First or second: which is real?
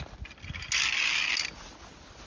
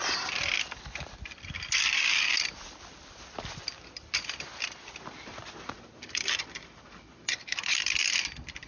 first